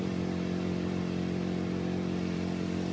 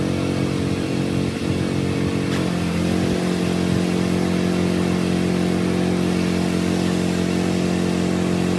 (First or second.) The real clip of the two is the second